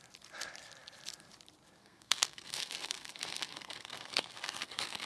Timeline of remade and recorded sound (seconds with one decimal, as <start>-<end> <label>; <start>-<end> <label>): 0.0-1.8 recorded; 1.8-5.1 remade